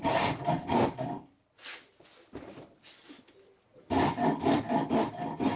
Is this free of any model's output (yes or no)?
yes